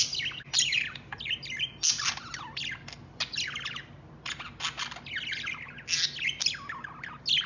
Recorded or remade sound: recorded